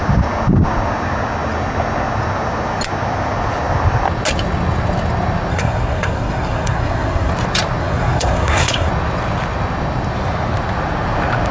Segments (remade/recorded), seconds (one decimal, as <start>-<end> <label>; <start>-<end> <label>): 0.0-5.5 recorded; 5.5-7.3 remade; 7.3-7.8 recorded; 7.8-8.9 remade; 8.9-11.5 recorded